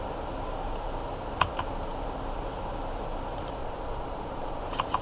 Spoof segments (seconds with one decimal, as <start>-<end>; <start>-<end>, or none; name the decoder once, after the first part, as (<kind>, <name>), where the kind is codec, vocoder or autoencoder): 3.6-4.6 (vocoder, Vocos)